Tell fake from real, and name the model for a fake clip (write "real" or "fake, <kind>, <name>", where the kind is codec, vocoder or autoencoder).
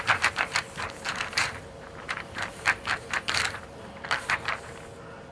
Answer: fake, vocoder, BigVGAN v2